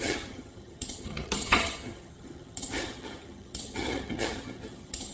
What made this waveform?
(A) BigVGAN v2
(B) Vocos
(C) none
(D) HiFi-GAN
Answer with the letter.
D